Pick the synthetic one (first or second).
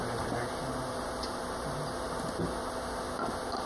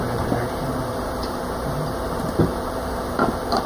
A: second